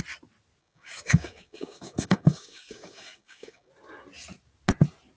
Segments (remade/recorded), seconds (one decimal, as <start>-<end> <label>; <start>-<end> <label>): 0.0-0.6 recorded; 0.6-3.7 remade; 3.7-5.2 recorded